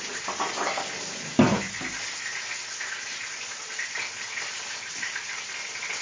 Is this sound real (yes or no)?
yes